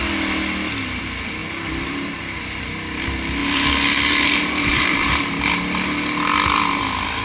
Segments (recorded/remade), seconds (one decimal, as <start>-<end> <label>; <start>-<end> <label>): 0.0-1.4 recorded; 1.4-2.2 remade; 2.2-3.4 recorded; 3.4-5.4 remade; 5.4-7.2 recorded